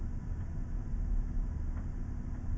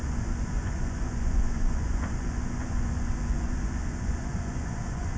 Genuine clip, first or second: first